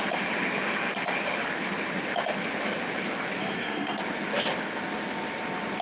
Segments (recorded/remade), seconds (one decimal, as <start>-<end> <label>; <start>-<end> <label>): 0.0-3.4 recorded; 3.4-4.0 remade; 4.0-5.8 recorded